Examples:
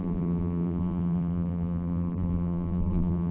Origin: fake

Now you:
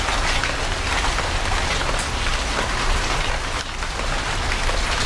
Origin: real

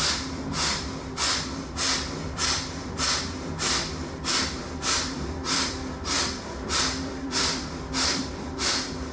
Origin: fake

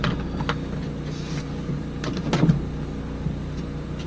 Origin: real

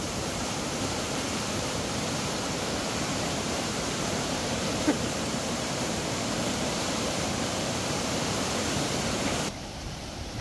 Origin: fake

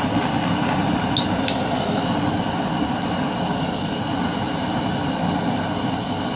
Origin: real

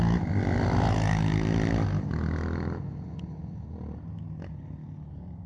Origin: real